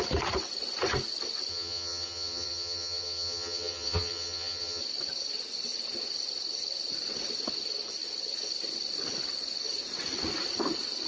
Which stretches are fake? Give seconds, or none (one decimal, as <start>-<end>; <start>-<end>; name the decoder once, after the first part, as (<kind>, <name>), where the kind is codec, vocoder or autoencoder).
1.5-4.8 (vocoder, HiFi-GAN)

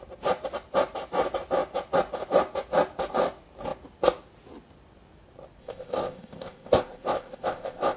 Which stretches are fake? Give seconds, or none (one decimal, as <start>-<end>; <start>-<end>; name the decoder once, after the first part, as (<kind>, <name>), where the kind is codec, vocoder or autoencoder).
5.6-8.0 (codec, ZipCodec)

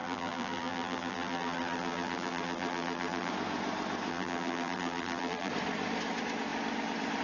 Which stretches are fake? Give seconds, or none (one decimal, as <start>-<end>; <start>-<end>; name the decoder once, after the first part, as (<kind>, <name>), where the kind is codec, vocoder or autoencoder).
0.0-3.3 (vocoder, BigVGAN v2); 4.1-5.5